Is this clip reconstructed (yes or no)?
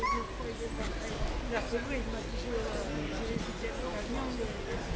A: no